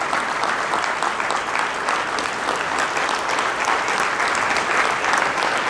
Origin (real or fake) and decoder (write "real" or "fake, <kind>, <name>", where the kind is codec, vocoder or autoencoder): real